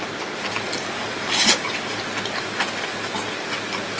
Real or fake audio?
real